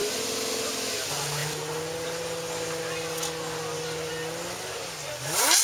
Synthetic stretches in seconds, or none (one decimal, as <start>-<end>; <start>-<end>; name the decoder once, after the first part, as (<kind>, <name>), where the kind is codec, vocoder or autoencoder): 0.0-0.9 (vocoder, BigVGAN v2)